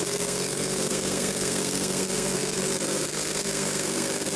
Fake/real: fake